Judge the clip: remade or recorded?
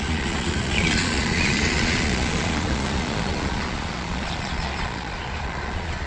remade